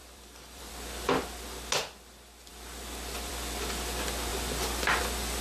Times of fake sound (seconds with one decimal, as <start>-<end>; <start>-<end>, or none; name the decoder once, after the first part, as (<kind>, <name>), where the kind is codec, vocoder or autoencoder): 0.0-0.7 (vocoder, BigVGAN v2)

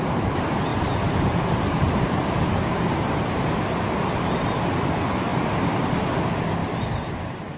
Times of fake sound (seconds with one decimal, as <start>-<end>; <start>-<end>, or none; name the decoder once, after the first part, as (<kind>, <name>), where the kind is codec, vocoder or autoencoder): 0.7-3.4 (vocoder, BigVGAN v2); 5.3-5.8; 6.6-7.6

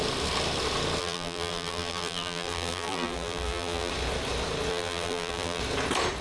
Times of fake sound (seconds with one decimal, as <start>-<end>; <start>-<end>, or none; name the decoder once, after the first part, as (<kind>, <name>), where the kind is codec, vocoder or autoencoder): 1.0-3.9 (vocoder, BigVGAN v2); 4.7-5.6

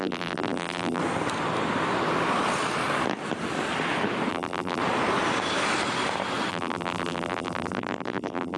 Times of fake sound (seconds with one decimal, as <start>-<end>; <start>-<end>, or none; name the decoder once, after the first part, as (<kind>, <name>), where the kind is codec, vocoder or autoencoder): 0.0-1.0 (vocoder, BigVGAN v2); 4.3-4.8; 6.5-8.6